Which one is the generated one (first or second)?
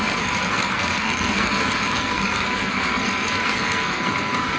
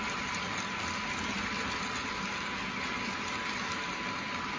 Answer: first